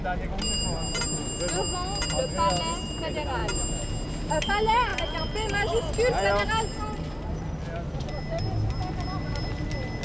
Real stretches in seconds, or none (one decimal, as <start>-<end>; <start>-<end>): 0.0-10.0

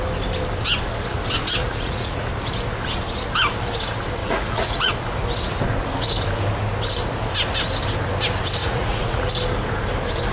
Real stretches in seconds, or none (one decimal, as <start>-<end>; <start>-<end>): 0.0-1.6; 2.2-4.2; 4.9-8.6; 9.3-10.3

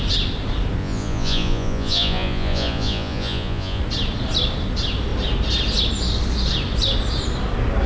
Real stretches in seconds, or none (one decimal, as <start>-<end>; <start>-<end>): 0.0-0.8; 3.8-7.9

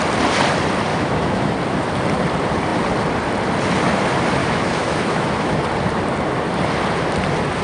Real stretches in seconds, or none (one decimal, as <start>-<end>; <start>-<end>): 0.0-0.9; 1.5-4.4; 5.6-7.6

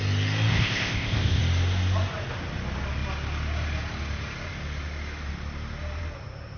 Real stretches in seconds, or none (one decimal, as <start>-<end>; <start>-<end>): 0.0-0.5; 1.4-6.6

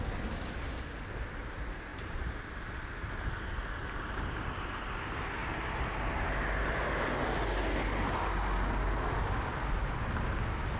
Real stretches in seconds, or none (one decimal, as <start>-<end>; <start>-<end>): 0.0-1.9; 3.1-3.8; 4.6-5.4; 7.1-10.8

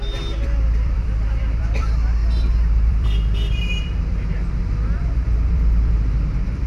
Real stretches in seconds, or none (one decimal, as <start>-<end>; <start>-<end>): 2.2-2.9